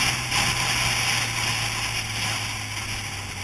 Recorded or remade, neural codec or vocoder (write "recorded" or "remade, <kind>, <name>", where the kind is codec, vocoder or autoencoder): recorded